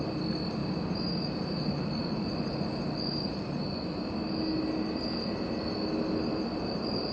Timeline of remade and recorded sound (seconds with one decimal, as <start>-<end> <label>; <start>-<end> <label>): 0.0-0.6 recorded; 0.6-4.0 remade; 4.0-6.3 recorded; 6.3-7.1 remade